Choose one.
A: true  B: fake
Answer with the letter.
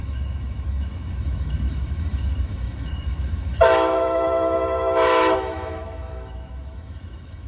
B